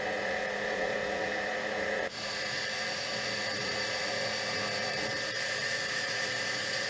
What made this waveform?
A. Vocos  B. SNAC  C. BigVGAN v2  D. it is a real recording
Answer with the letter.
A